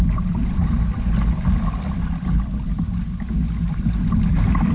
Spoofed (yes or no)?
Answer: no